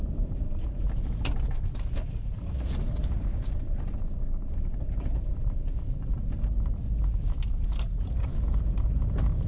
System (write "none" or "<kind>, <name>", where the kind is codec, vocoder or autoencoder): vocoder, BigVGAN v2